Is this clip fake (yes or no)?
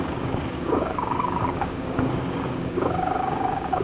yes